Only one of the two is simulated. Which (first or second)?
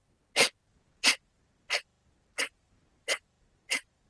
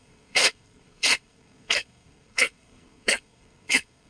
second